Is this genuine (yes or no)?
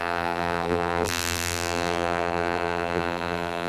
no